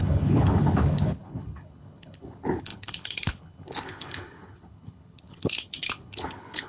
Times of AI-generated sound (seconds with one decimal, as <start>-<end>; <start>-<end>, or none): 0.0-6.7